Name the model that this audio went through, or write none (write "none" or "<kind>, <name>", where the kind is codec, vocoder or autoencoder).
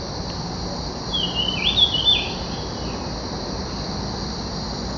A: none